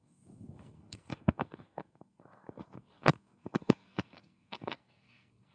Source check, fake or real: fake